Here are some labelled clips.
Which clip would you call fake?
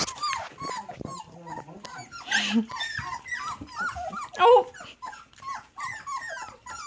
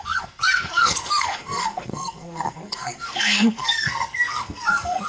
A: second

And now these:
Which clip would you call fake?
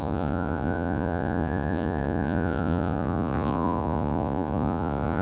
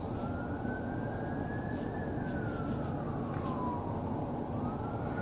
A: first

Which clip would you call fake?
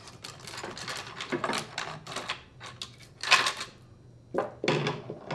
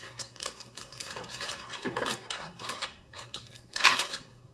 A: second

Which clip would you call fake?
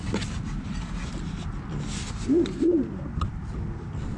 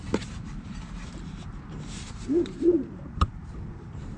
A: second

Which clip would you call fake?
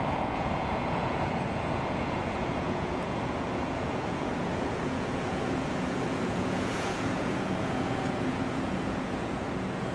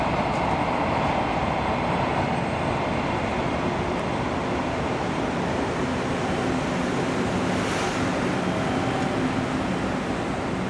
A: first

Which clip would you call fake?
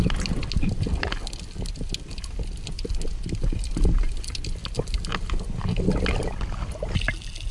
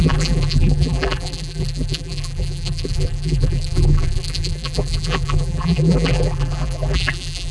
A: second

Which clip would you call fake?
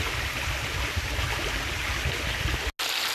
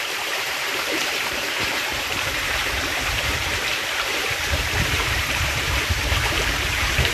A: second